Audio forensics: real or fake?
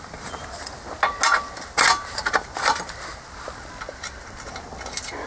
real